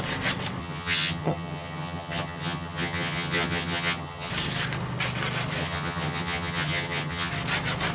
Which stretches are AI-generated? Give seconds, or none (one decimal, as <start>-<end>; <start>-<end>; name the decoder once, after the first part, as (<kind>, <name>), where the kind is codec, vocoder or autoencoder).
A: 0.6-4.3 (vocoder, HiFi-GAN); 5.6-7.3